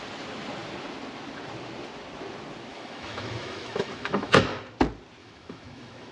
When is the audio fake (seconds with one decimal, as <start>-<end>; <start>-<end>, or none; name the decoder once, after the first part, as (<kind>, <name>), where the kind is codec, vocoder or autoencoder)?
2.7-4.4 (autoencoder, DAC-VAE); 5.2-6.1